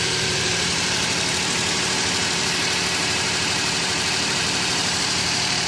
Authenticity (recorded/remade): remade